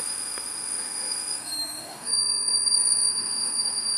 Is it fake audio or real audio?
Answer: fake